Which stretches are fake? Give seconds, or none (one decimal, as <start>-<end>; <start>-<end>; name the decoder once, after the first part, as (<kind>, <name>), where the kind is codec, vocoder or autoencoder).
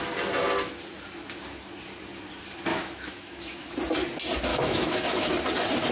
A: 2.7-3.7 (autoencoder, DAC-VAE); 4.5-5.3